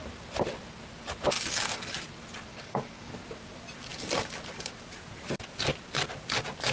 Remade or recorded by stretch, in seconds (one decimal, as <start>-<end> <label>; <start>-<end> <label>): 0.0-2.5 recorded; 2.5-3.1 remade; 3.1-6.7 recorded